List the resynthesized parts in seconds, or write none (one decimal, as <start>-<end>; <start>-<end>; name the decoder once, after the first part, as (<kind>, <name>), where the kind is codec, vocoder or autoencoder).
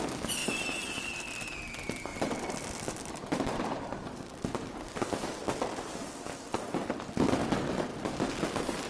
0.4-1.0 (vocoder, BigVGAN v2); 2.1-4.2; 7.9-8.9